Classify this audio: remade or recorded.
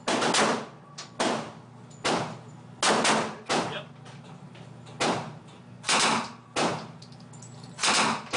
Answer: recorded